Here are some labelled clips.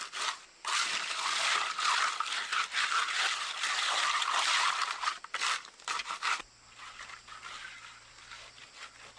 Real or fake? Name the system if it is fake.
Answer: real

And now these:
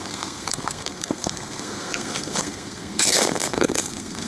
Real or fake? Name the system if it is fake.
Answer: fake, codec, SNAC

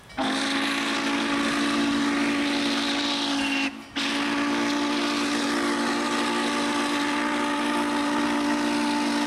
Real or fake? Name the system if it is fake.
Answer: real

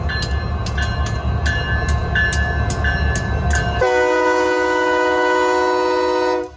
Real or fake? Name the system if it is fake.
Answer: real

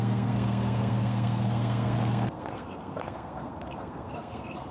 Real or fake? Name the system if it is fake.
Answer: fake, codec, SNAC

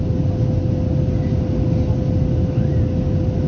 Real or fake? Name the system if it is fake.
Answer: real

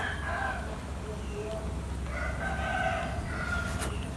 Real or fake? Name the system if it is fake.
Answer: real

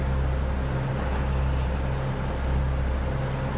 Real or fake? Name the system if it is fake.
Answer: real